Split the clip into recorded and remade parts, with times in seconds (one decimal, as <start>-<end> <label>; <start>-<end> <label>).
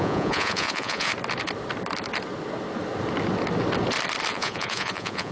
0.0-1.1 remade; 1.1-4.3 recorded; 4.3-5.3 remade